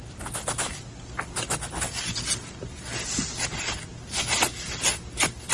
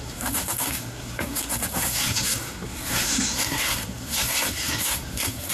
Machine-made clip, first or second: second